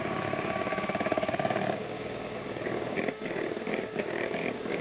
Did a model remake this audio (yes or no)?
yes